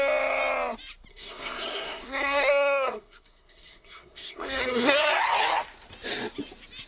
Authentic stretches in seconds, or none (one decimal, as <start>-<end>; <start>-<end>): 0.0-1.1; 5.2-6.9